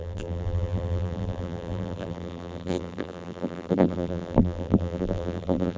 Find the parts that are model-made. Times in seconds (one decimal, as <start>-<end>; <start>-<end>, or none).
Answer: 0.0-5.8